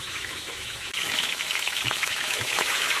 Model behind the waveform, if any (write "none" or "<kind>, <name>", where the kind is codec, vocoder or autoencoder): autoencoder, DAC-VAE